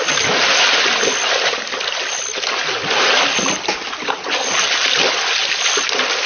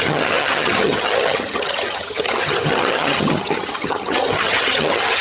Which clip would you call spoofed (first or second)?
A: second